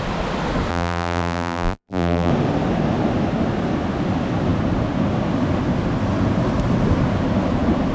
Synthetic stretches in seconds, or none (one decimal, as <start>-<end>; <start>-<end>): 0.7-2.3